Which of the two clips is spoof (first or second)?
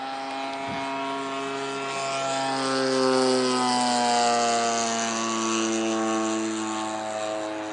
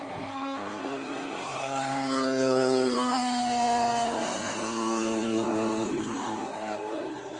second